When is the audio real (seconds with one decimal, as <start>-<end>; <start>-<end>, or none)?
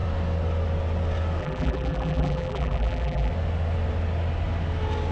0.0-1.4; 3.3-5.1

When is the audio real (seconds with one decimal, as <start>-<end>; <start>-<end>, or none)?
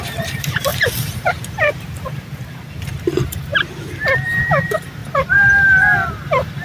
3.5-4.5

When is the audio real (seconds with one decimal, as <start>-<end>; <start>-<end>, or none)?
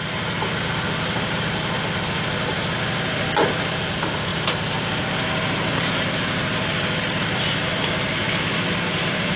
0.0-4.3; 6.8-7.7